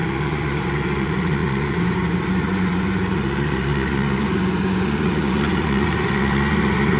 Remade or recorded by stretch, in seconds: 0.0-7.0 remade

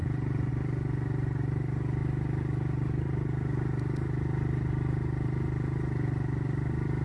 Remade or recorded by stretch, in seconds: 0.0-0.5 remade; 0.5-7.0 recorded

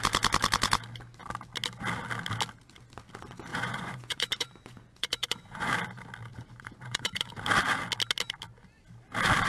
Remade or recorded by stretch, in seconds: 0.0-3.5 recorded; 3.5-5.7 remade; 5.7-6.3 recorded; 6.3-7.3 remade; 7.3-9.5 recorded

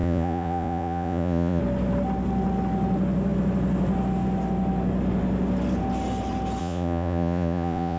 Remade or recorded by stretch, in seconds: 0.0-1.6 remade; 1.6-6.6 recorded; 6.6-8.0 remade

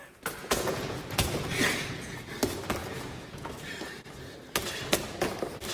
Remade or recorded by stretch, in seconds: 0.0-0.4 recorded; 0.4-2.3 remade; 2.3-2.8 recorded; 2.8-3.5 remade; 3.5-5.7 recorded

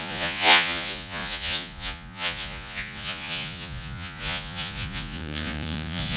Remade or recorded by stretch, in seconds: 0.0-6.2 remade